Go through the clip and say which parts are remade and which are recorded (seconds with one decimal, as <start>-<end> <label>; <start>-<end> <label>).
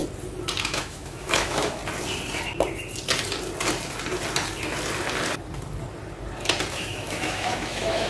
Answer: 0.0-0.6 recorded; 0.6-1.8 remade; 1.8-6.7 recorded; 6.7-8.1 remade